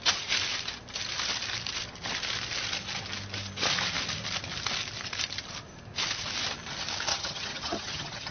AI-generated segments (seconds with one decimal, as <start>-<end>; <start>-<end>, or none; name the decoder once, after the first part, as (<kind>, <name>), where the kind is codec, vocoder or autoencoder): 7.1-8.3 (vocoder, HiFi-GAN)